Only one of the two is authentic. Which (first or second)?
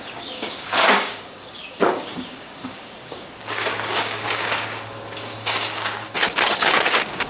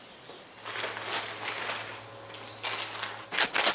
second